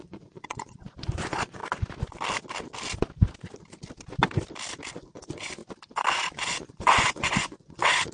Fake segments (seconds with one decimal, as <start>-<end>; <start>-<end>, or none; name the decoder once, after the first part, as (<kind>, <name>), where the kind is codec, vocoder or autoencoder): 0.0-1.6 (vocoder, Vocos); 4.9-5.6; 6.1-8.1